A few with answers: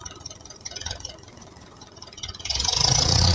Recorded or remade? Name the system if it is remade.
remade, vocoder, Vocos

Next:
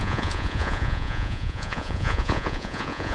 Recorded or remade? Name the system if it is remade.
remade, vocoder, Vocos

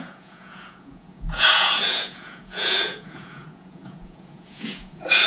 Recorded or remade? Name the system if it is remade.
remade, vocoder, Vocos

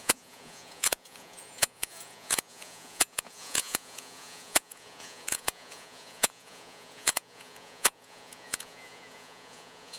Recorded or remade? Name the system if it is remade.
remade, vocoder, Vocos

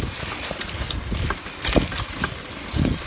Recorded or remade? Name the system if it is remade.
recorded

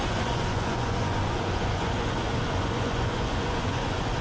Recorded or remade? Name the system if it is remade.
remade, vocoder, Vocos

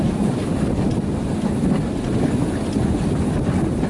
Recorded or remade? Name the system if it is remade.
recorded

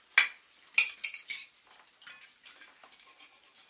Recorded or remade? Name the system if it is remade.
recorded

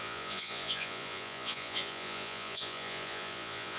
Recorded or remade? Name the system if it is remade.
remade, vocoder, Vocos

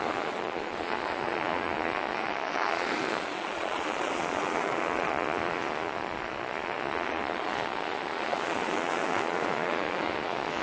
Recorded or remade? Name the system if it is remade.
remade, vocoder, Vocos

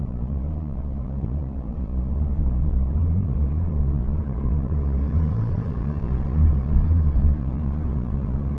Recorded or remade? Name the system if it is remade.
remade, vocoder, Vocos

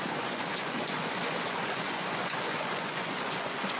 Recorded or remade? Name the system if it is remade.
remade, vocoder, Vocos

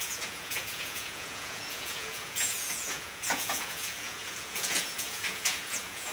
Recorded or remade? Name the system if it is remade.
remade, vocoder, Vocos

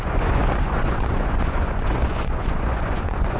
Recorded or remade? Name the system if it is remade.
remade, vocoder, Vocos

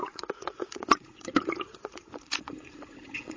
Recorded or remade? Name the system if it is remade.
remade, vocoder, Vocos